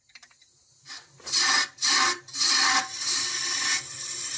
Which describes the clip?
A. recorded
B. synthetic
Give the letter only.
A